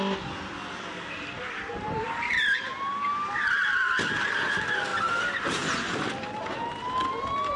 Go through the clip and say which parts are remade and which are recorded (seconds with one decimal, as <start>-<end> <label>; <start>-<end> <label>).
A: 0.0-7.6 recorded